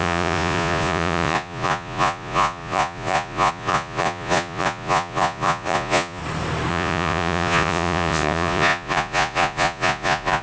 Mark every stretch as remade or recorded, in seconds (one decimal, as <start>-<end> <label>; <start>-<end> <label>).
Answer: 0.0-6.2 remade; 6.2-6.7 recorded; 6.7-10.4 remade